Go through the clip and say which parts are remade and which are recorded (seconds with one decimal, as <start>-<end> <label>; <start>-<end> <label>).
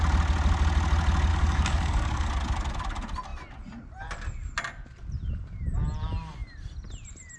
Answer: 0.0-1.3 recorded; 1.3-2.3 remade; 2.3-7.4 recorded